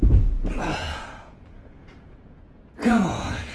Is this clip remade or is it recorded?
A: remade